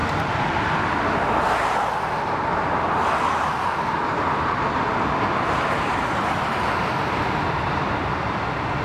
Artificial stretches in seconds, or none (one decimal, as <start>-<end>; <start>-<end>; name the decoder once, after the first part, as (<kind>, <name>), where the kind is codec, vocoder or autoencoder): 0.0-1.4 (vocoder, BigVGAN v2)